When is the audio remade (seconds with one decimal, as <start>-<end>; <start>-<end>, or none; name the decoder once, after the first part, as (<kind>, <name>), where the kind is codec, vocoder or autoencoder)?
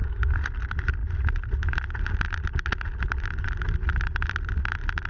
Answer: none